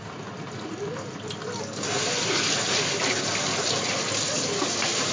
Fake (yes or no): no